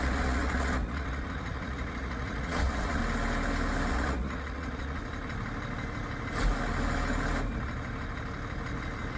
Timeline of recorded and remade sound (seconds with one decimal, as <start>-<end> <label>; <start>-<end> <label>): 0.0-3.0 remade; 3.0-3.9 recorded; 3.9-5.0 remade; 5.0-9.2 recorded